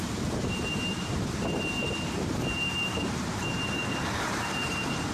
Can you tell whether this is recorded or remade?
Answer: remade